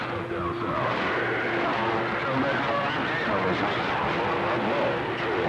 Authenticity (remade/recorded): recorded